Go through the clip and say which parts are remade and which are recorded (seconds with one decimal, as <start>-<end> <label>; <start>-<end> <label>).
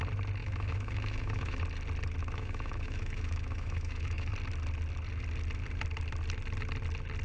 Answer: 0.0-0.4 recorded; 0.4-1.6 remade; 1.6-2.2 recorded; 2.2-4.3 remade; 4.3-7.2 recorded